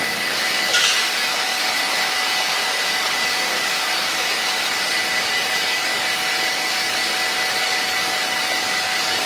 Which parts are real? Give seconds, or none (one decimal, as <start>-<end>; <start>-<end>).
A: 7.1-7.6